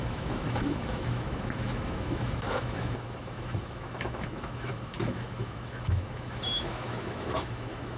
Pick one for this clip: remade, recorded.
remade